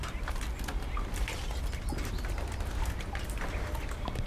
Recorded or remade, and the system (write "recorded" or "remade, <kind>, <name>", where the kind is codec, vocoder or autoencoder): recorded